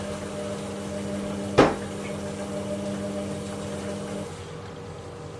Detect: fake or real real